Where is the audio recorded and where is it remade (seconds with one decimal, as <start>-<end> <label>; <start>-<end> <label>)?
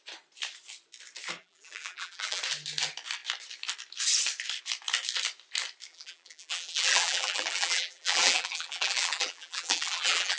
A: 0.0-1.4 recorded; 1.4-2.4 remade; 2.4-5.9 recorded; 5.9-10.4 remade